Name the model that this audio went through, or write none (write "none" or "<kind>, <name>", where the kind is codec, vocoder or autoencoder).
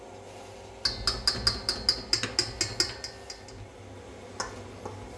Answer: none